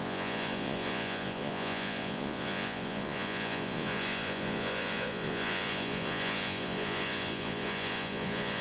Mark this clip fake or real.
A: fake